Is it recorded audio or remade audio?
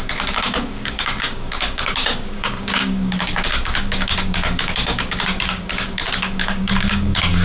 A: remade